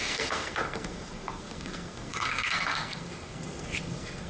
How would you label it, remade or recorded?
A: remade